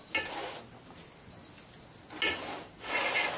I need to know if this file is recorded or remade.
recorded